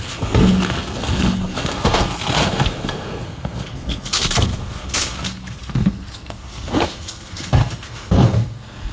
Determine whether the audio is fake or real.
fake